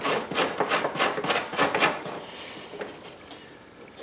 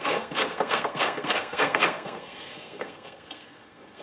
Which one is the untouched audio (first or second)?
first